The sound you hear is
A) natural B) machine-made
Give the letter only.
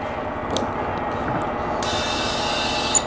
A